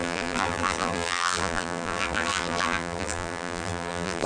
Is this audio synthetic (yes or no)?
yes